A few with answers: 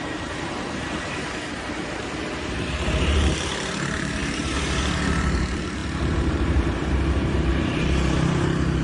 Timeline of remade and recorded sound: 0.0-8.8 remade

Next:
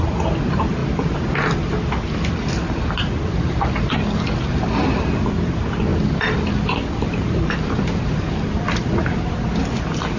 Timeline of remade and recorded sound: 0.0-0.8 recorded; 0.8-2.5 remade; 2.5-5.9 recorded; 5.9-10.2 remade

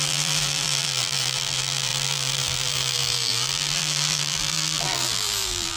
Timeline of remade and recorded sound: 0.0-5.8 remade

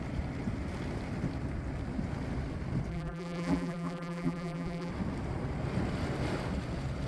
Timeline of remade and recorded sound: 0.0-2.9 recorded; 2.9-4.9 remade; 4.9-7.1 recorded

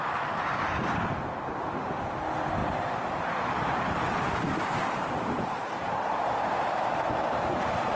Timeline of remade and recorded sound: 0.0-2.6 recorded; 2.6-6.3 remade; 6.3-8.0 recorded

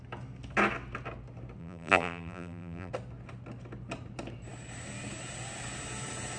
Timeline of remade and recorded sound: 0.0-1.6 recorded; 1.6-2.9 remade; 2.9-6.4 recorded

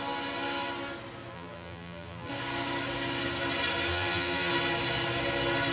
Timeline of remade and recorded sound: 0.0-1.3 recorded; 1.3-2.3 remade; 2.3-3.9 recorded; 3.9-4.5 remade; 4.5-5.7 recorded